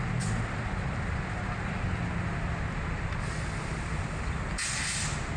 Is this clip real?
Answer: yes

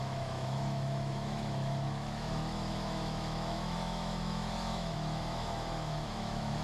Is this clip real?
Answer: no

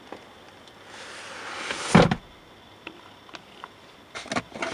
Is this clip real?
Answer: yes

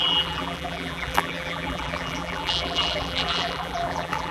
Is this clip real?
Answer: no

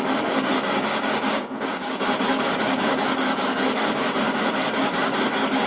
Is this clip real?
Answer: no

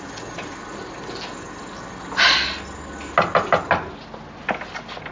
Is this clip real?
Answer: yes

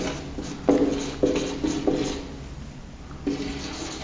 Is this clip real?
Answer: yes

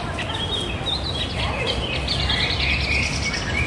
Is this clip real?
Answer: yes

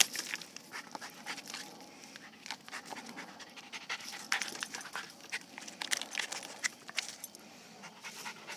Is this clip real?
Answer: yes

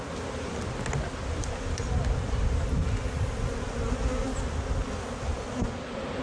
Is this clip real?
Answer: yes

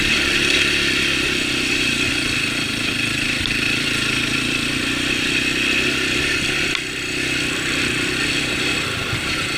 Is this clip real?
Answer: no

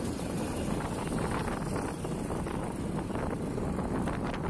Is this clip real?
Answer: yes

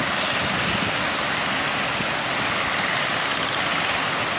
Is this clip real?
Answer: yes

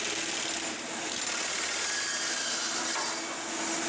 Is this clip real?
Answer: yes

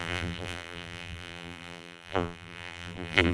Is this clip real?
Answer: no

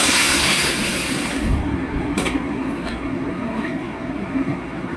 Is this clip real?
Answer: no